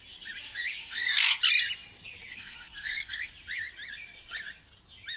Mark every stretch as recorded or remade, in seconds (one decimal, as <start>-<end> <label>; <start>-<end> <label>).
0.0-0.8 recorded; 0.8-1.4 remade; 1.4-2.3 recorded; 2.3-3.3 remade; 3.3-5.2 recorded

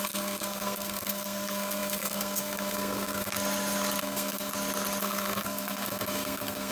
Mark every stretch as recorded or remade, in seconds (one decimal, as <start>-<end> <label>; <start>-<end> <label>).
0.0-3.3 remade; 3.3-4.0 recorded; 4.0-4.5 remade; 4.5-5.0 recorded; 5.0-6.7 remade

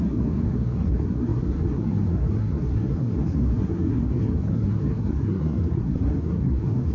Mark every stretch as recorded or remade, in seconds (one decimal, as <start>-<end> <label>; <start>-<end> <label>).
0.0-6.9 remade

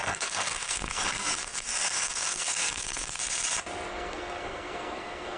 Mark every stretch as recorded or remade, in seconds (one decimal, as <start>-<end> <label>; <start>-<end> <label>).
0.0-3.2 remade; 3.2-3.9 recorded; 3.9-5.4 remade

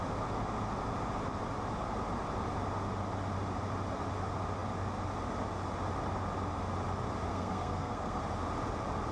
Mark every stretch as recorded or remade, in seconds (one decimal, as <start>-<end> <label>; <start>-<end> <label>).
0.0-7.3 recorded; 7.3-8.2 remade; 8.2-9.1 recorded

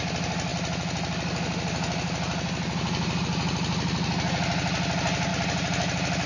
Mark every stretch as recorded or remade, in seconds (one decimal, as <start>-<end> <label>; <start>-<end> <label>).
0.0-6.3 recorded

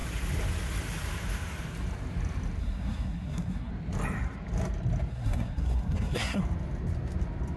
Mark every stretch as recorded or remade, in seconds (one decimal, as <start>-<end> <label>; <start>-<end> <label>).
0.0-2.6 recorded; 2.6-3.7 remade; 3.7-5.1 recorded; 5.1-6.4 remade; 6.4-7.6 recorded